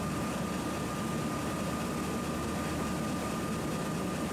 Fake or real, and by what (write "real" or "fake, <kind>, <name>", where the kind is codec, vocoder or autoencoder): real